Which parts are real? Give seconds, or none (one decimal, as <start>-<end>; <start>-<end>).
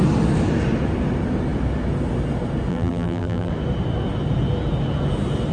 0.0-2.7; 3.5-5.5